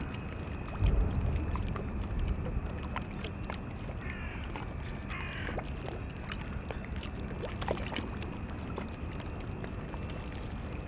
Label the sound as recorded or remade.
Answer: recorded